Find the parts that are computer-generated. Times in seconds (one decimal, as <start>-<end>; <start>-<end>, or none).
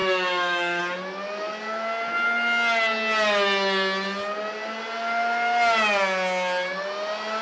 0.0-0.8